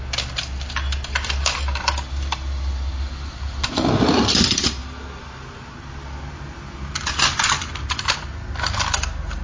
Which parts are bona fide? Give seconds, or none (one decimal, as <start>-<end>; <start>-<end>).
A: 0.0-9.4